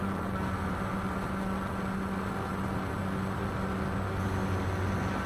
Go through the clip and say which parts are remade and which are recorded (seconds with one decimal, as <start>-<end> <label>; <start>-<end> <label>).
0.0-5.3 recorded